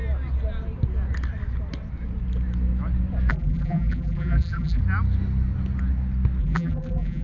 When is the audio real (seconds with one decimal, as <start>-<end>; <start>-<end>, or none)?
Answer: 0.0-3.3; 4.8-6.4